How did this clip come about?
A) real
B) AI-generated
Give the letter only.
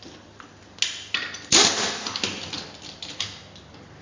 A